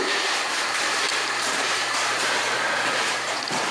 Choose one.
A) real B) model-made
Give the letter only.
B